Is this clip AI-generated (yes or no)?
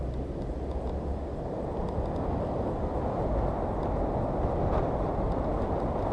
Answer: no